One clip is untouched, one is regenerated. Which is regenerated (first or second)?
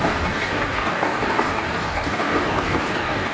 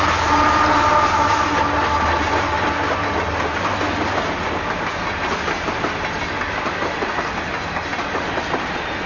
first